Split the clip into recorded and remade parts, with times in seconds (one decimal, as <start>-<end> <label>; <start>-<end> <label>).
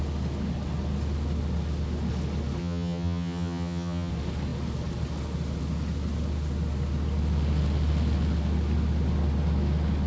0.0-2.6 recorded; 2.6-4.1 remade; 4.1-10.1 recorded